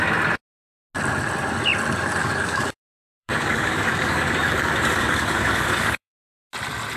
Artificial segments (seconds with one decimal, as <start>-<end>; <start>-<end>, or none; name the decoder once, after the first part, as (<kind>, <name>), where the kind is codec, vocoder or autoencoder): 2.2-6.2 (codec, DAC)